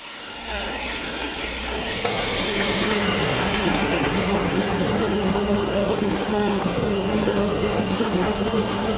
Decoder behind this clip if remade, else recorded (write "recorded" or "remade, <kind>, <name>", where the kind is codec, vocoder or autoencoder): remade, codec, SNAC